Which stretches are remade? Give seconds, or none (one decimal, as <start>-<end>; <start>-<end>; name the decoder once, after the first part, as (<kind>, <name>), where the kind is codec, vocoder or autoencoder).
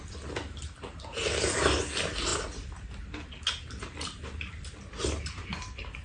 none